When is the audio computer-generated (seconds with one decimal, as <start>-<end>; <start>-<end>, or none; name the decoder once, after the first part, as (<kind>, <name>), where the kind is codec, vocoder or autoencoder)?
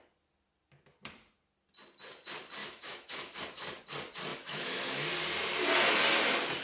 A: 2.6-3.4 (autoencoder, DAC-VAE); 4.3-5.1